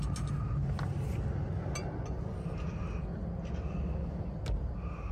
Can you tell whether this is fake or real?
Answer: real